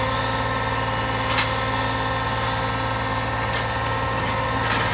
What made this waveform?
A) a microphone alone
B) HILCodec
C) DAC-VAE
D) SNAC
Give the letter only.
A